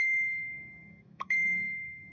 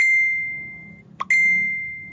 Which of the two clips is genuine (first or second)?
second